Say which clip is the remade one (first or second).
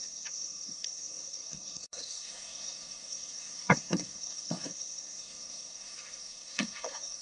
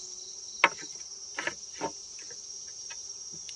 first